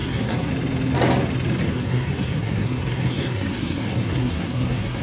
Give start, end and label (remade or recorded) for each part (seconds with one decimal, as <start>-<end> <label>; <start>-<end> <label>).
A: 0.0-0.5 remade; 0.5-1.7 recorded; 1.7-5.0 remade